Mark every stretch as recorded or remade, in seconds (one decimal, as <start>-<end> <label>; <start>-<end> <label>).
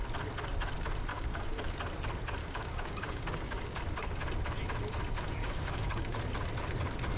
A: 0.0-1.1 recorded; 1.1-1.7 remade; 1.7-2.4 recorded; 2.4-3.8 remade; 3.8-5.4 recorded; 5.4-6.2 remade; 6.2-7.2 recorded